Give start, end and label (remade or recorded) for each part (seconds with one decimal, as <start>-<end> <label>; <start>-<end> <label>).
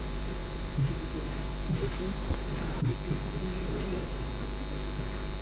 0.0-2.9 remade; 2.9-3.6 recorded; 3.6-4.3 remade; 4.3-5.4 recorded